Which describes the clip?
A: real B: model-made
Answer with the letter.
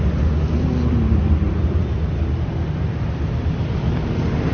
A